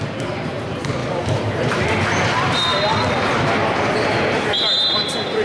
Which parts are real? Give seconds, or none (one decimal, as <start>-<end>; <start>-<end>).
0.0-1.0; 1.6-5.4